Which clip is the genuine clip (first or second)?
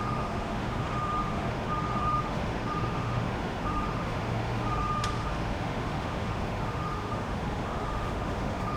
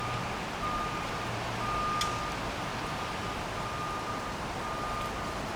second